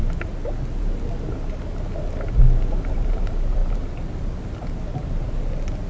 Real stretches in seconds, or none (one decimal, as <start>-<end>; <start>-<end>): 0.0-5.9